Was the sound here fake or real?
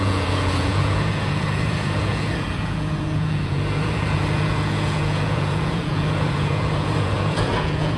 fake